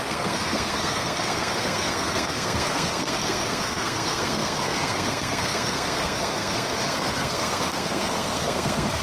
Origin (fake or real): fake